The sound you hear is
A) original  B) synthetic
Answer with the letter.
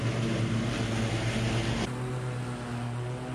A